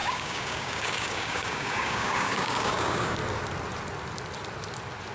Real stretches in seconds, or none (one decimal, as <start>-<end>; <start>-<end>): 3.2-5.1